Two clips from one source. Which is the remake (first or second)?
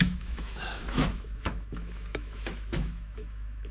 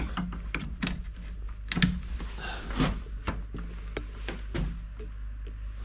first